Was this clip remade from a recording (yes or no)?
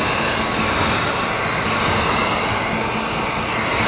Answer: no